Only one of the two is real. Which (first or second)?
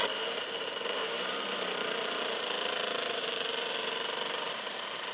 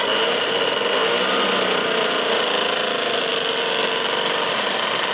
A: second